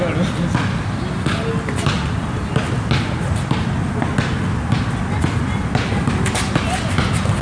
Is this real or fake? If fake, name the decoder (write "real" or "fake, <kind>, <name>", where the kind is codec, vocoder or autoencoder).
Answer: real